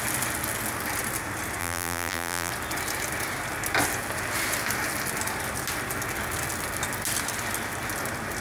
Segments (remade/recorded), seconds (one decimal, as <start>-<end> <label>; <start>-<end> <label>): 0.0-1.6 recorded; 1.6-2.5 remade; 2.5-8.4 recorded